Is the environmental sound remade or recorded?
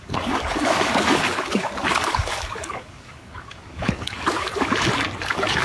remade